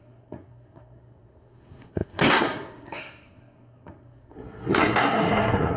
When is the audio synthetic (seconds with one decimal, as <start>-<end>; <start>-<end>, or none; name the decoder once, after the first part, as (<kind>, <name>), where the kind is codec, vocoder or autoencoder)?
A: 0.0-5.8 (codec, SNAC)